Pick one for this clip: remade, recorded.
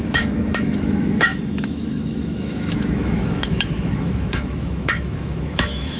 remade